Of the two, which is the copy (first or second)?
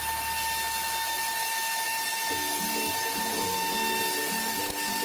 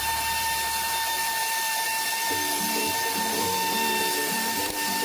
second